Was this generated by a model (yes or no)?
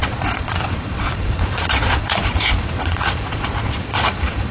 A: yes